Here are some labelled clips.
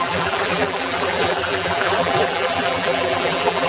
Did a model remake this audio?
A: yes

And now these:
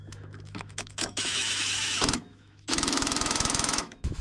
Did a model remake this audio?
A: yes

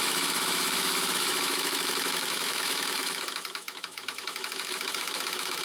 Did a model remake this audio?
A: yes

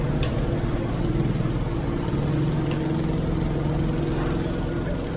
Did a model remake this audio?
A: no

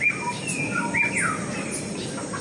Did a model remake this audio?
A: no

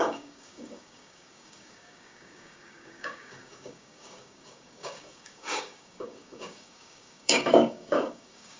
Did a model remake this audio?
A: yes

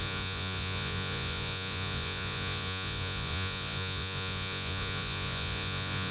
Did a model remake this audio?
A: yes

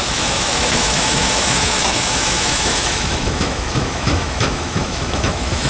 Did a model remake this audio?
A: yes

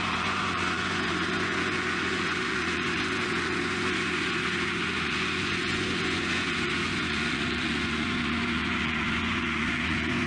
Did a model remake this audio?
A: yes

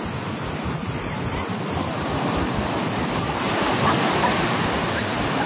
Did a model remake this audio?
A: no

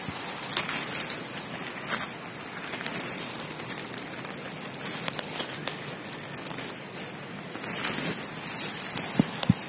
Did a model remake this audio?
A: no